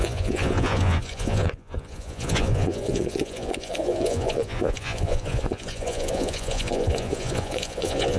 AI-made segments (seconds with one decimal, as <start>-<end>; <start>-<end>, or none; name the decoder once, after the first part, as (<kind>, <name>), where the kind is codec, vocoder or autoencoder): 0.0-8.2 (vocoder, Vocos)